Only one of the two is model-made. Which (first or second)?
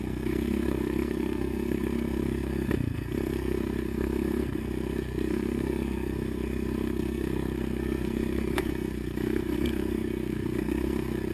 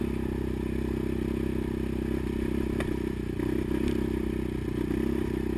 first